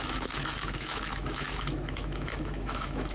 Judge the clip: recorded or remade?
remade